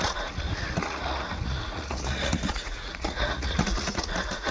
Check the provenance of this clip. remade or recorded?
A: remade